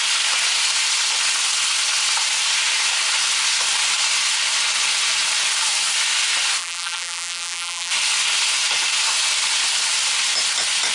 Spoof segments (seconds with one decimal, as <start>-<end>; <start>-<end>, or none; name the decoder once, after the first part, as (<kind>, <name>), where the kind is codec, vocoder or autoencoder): 6.6-7.9 (vocoder, BigVGAN v2)